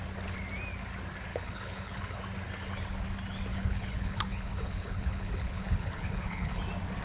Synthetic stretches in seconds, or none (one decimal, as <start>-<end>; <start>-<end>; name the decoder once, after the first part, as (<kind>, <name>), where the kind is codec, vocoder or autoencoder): 1.3-2.2 (codec, HILCodec); 3.5-6.6